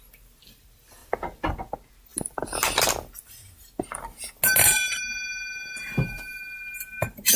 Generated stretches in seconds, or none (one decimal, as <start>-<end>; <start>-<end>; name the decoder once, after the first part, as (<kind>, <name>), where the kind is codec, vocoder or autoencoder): none